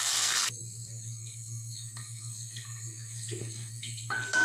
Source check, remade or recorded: remade